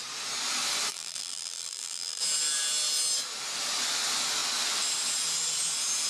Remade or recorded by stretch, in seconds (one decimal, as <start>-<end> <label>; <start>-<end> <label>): 0.0-0.9 recorded; 0.9-2.2 remade; 2.2-6.1 recorded